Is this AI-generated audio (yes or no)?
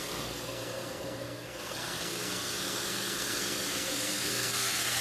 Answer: yes